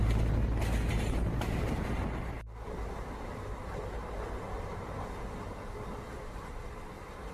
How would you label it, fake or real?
real